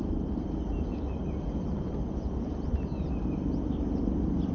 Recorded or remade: recorded